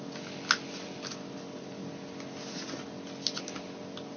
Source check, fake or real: real